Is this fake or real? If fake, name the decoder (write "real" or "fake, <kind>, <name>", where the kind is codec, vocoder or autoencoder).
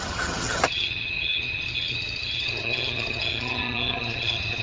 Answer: fake, vocoder, HiFi-GAN